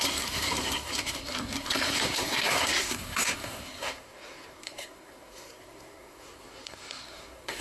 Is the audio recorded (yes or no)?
no